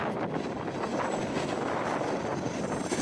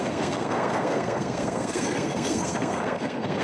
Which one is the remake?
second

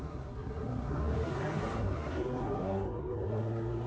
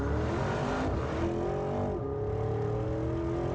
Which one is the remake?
first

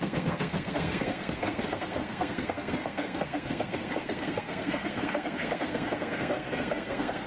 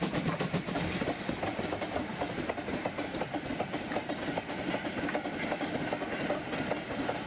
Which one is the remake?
first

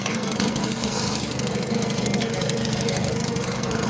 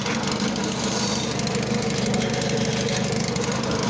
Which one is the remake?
first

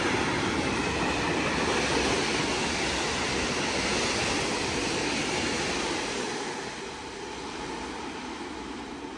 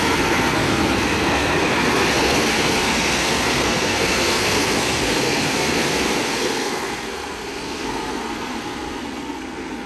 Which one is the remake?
second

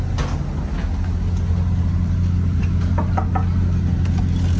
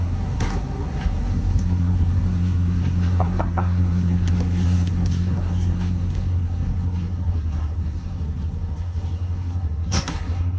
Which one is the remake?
second